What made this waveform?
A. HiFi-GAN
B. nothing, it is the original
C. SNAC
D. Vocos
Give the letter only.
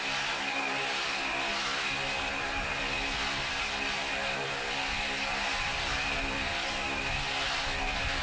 B